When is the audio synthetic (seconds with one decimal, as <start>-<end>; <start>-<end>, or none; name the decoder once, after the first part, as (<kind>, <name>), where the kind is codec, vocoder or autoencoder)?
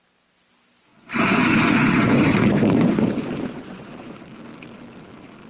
0.9-4.2 (vocoder, Vocos)